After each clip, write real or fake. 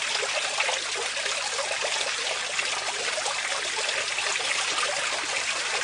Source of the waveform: real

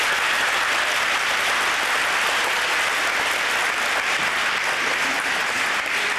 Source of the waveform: real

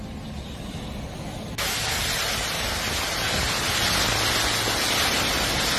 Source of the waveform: real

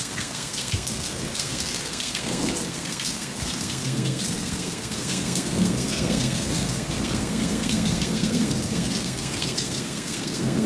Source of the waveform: fake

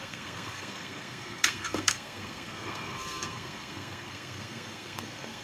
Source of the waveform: fake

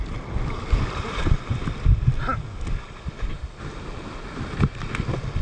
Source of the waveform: real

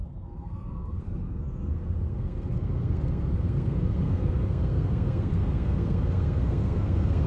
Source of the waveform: fake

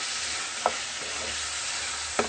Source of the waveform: real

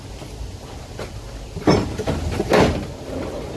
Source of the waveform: real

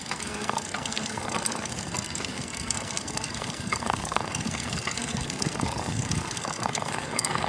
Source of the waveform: fake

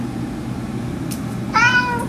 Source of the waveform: real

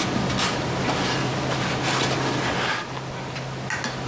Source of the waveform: real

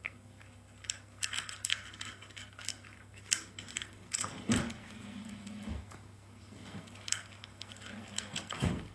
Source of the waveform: fake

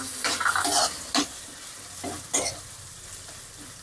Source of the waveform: real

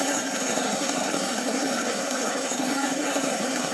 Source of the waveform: fake